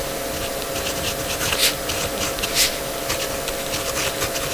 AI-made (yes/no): no